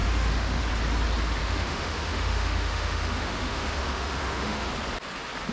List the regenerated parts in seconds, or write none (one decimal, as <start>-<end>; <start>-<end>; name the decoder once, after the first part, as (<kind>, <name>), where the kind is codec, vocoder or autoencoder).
0.0-0.6 (autoencoder, DAC-VAE); 1.4-4.7